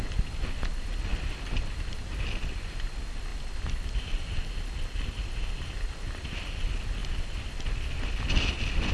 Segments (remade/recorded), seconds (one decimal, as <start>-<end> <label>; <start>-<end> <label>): 0.0-3.3 recorded; 3.3-4.3 remade; 4.3-7.0 recorded; 7.0-7.6 remade; 7.6-8.9 recorded